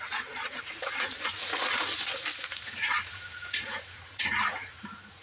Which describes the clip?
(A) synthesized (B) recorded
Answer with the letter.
A